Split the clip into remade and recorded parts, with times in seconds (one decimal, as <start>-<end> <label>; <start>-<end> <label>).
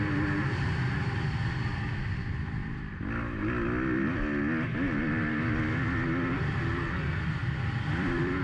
0.0-7.4 recorded; 7.4-8.4 remade